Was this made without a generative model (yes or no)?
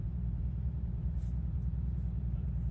no